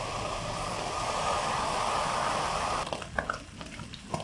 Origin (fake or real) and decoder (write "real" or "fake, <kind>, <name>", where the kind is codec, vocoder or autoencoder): real